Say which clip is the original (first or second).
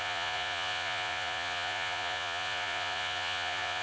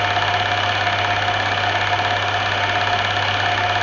second